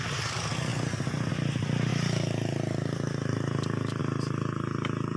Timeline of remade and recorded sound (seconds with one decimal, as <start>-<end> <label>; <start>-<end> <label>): 0.0-5.2 recorded